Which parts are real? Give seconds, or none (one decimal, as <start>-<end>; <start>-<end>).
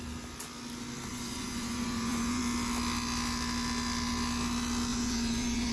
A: 0.0-1.1; 2.4-4.9